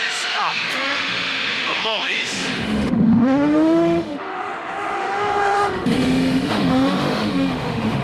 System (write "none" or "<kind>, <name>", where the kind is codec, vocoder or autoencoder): autoencoder, DAC-VAE